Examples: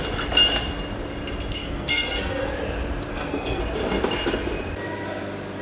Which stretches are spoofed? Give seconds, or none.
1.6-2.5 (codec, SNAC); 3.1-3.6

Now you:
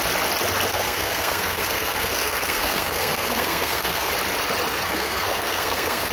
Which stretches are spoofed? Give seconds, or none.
0.7-4.1 (codec, SNAC); 4.7-6.1

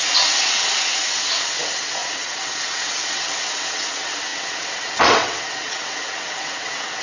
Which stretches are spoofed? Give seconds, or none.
0.0-7.0 (vocoder, WaveNeXt)

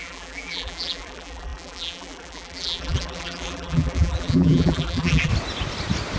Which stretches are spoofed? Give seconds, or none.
0.0-5.3 (vocoder, BigVGAN v2)

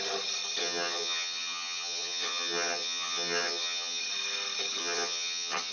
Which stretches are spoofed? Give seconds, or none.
0.6-4.0 (vocoder, HiFi-GAN); 4.8-5.7

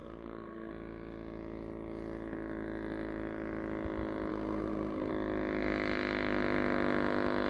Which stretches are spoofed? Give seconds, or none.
0.0-0.7 (codec, SNAC); 4.3-5.1

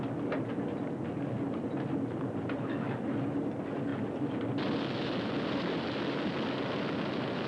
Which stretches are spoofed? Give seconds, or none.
none